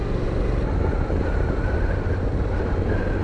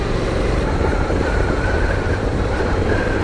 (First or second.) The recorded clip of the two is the first